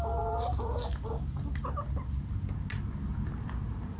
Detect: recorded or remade recorded